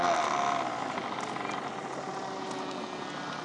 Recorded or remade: recorded